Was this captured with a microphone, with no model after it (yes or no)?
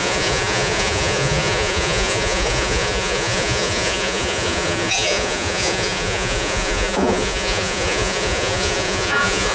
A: no